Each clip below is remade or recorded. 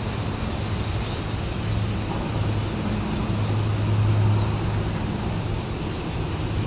recorded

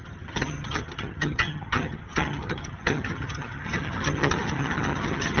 remade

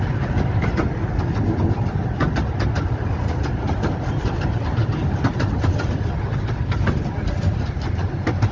recorded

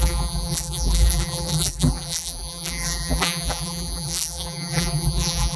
remade